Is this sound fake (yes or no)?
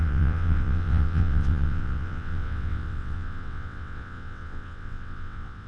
yes